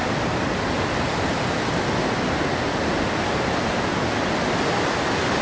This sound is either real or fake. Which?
real